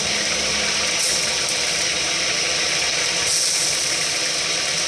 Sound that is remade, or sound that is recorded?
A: recorded